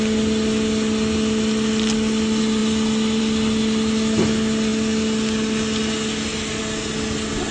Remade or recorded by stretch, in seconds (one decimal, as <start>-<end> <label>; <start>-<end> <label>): 0.0-7.5 recorded